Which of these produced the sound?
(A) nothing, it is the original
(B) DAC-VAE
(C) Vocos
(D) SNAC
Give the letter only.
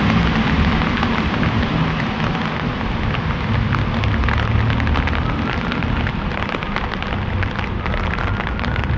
A